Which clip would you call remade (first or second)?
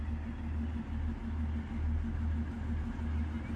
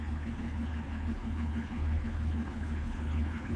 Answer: second